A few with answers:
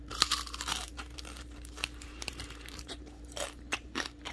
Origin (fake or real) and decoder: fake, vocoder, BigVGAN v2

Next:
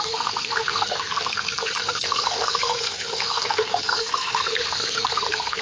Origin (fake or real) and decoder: fake, codec, SNAC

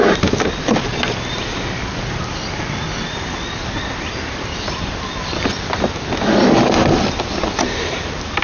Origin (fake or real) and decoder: real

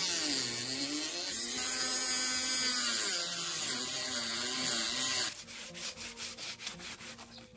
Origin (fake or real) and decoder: real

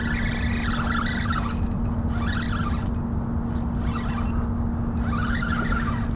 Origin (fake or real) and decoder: real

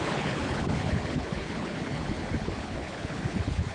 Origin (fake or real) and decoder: fake, codec, HILCodec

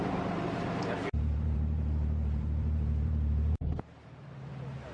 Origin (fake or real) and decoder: fake, vocoder, BigVGAN v2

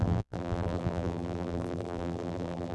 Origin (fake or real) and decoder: fake, vocoder, BigVGAN v2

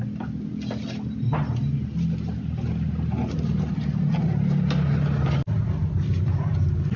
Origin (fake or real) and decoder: real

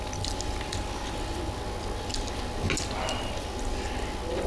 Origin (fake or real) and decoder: real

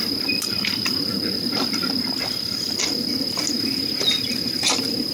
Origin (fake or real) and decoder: fake, vocoder, BigVGAN v2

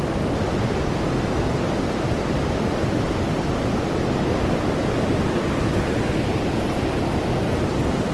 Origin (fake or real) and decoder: real